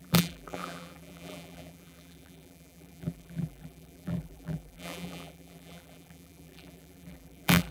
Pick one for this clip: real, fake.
fake